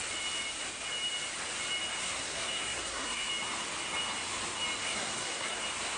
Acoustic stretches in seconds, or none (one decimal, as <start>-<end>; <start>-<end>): 0.0-2.0; 3.3-4.8; 5.6-6.0